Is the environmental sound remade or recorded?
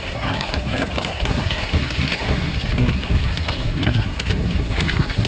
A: remade